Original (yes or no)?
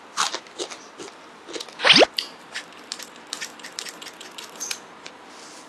yes